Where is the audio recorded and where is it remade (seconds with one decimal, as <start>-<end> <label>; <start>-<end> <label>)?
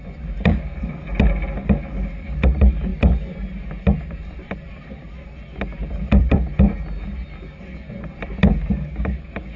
0.0-9.6 recorded